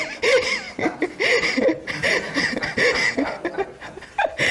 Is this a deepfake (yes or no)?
no